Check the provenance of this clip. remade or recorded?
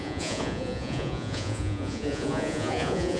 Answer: remade